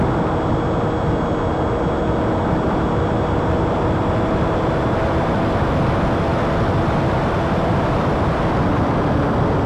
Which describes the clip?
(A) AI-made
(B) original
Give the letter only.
B